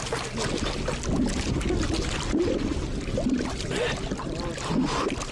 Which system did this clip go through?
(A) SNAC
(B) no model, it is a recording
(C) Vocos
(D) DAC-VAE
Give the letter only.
B